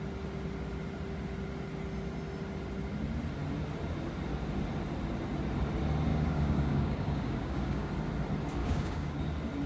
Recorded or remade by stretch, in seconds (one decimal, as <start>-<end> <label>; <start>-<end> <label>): 0.0-6.1 recorded; 6.1-7.9 remade; 7.9-8.6 recorded; 8.6-9.2 remade; 9.2-9.7 recorded